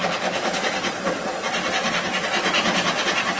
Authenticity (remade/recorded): recorded